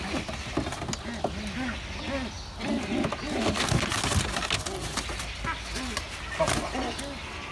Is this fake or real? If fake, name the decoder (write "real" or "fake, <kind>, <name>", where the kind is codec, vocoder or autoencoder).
real